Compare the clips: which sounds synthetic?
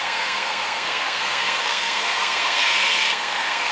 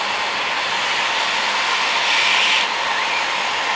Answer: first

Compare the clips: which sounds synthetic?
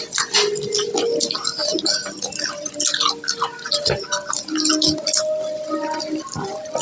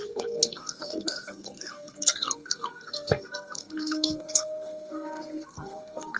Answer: second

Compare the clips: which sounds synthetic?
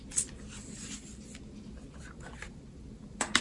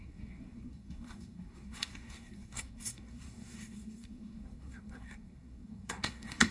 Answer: second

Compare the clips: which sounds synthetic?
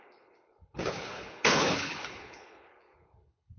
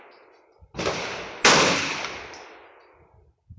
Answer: first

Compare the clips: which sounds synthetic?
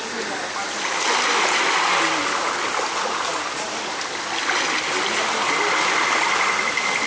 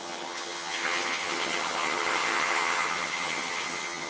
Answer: second